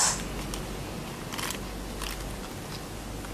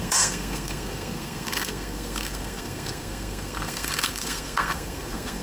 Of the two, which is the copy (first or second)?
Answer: second